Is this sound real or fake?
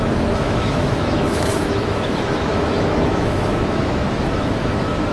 fake